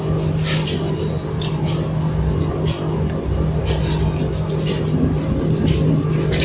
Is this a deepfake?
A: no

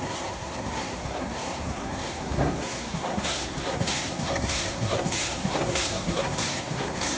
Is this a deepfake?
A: yes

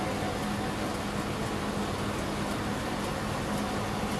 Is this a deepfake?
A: no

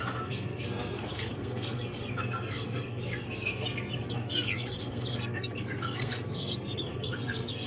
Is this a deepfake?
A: yes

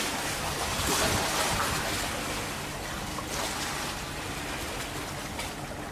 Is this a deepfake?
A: no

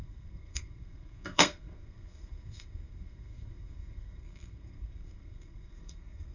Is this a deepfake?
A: yes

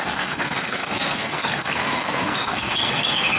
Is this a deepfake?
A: yes